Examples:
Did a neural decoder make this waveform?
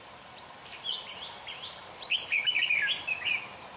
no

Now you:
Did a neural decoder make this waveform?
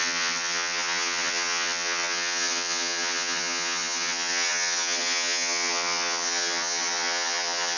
yes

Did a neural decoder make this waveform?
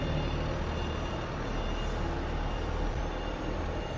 no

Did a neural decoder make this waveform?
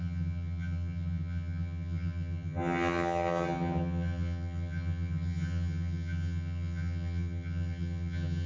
yes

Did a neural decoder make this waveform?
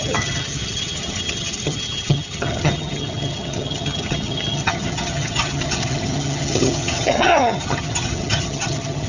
yes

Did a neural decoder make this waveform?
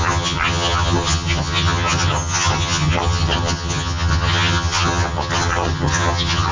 yes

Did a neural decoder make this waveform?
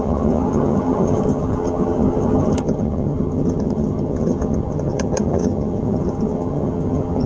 yes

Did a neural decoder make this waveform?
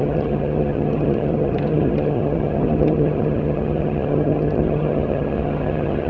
yes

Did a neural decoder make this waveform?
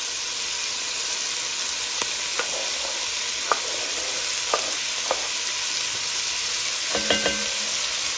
no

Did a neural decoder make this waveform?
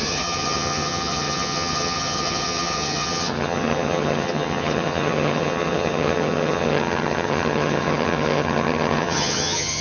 yes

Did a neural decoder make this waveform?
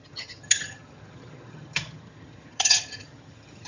yes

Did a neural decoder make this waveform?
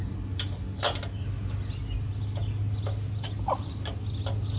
no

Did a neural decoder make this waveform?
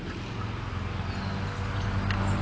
no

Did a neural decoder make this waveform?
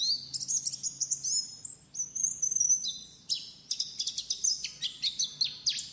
no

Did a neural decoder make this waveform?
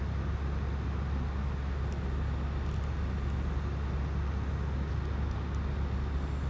no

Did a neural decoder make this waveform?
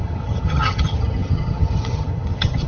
yes